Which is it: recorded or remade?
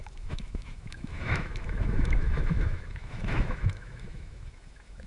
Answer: remade